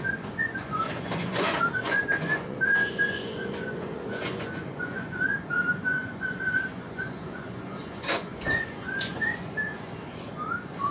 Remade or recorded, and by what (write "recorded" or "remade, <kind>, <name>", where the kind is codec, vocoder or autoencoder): remade, vocoder, Vocos